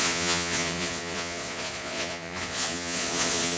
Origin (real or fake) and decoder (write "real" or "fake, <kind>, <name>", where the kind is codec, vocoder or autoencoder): fake, vocoder, Vocos